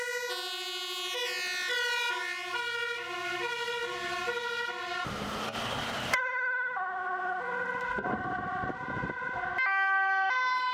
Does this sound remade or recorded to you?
recorded